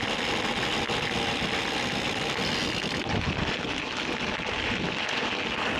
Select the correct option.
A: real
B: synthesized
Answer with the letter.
A